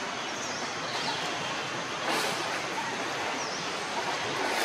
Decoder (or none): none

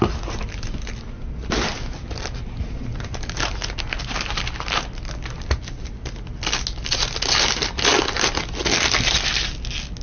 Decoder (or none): none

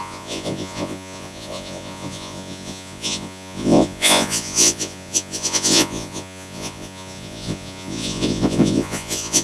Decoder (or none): vocoder, Vocos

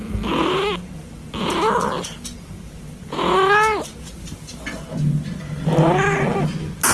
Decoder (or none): none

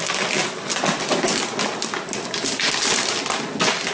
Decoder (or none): none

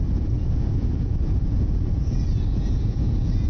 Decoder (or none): vocoder, Vocos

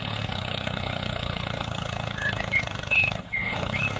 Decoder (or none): codec, HILCodec